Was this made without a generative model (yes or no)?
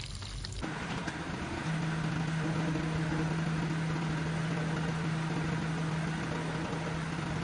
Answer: yes